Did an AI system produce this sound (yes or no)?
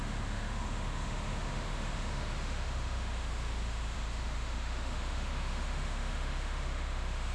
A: yes